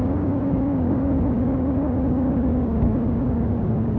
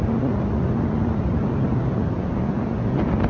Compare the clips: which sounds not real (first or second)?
first